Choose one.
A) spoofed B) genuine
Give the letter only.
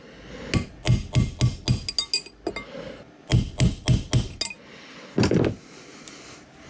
B